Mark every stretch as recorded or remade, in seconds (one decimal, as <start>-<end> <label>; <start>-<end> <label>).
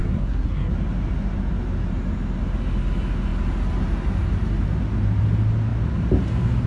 0.0-0.7 remade; 0.7-6.7 recorded